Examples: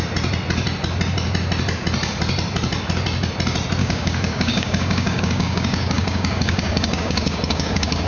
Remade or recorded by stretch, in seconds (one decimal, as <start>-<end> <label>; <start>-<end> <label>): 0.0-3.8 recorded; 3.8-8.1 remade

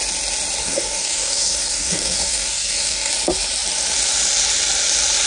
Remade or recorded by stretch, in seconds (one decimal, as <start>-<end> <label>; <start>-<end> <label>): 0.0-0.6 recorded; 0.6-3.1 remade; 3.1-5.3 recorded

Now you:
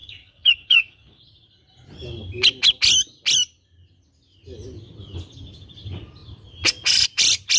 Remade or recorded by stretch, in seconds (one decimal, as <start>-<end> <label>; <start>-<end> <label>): 0.0-1.2 remade; 1.2-7.6 recorded